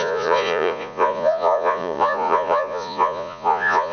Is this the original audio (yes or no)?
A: no